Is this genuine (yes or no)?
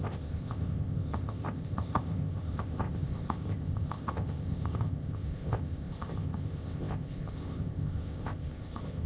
no